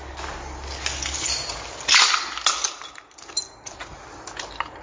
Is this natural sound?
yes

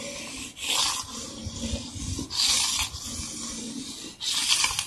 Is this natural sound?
yes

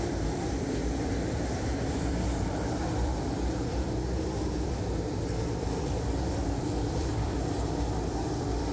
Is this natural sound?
no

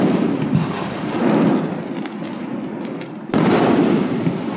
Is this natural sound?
yes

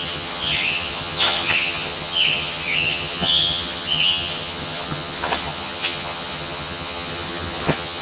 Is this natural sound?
no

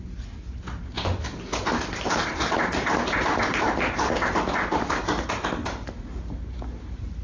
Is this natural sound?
yes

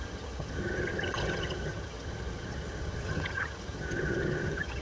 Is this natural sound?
no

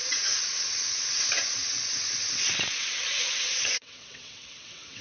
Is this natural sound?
no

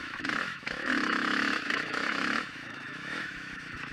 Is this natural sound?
no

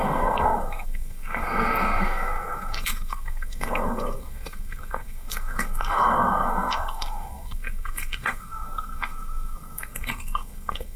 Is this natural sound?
no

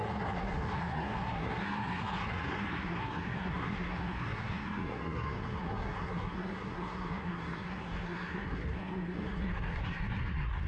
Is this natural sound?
no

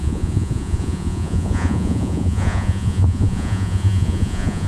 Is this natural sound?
no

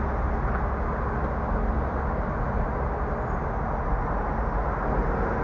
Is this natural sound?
yes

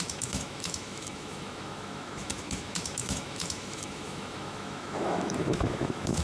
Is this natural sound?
no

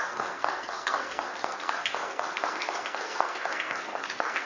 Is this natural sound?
no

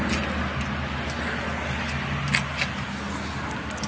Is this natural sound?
yes